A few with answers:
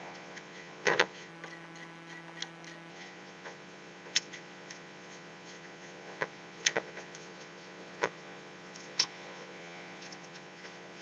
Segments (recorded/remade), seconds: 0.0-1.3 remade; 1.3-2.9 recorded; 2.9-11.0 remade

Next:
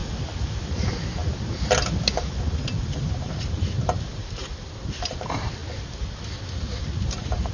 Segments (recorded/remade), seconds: 0.0-0.5 recorded; 0.5-1.2 remade; 1.2-3.2 recorded; 3.2-5.6 remade; 5.6-7.0 recorded; 7.0-7.5 remade

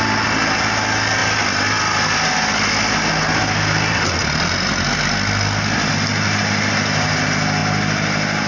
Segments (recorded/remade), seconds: 0.0-8.5 recorded

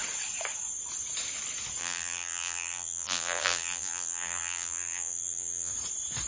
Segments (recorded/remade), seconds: 0.0-1.8 recorded; 1.8-5.7 remade; 5.7-6.3 recorded

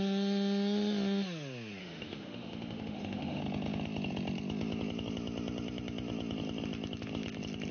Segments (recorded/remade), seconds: 0.0-1.8 recorded; 1.8-3.4 remade; 3.4-7.7 recorded

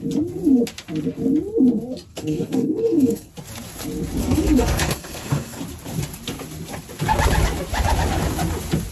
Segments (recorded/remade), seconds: 0.0-2.1 recorded; 2.1-3.3 remade; 3.3-4.2 recorded; 4.2-5.6 remade; 5.6-8.9 recorded